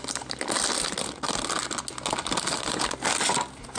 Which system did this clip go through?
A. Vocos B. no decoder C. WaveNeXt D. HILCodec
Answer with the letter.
B